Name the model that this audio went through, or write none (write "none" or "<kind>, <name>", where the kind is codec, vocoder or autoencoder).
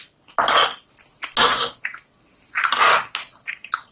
none